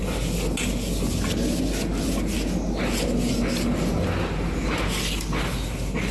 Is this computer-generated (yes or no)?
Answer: no